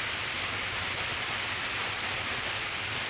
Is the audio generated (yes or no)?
no